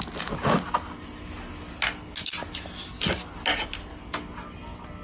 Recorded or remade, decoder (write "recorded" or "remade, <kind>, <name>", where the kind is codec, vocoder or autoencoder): recorded